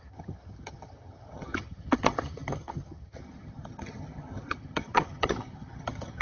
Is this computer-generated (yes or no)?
yes